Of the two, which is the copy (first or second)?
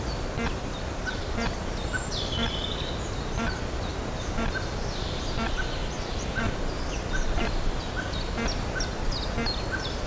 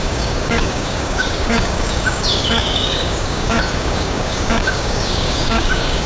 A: second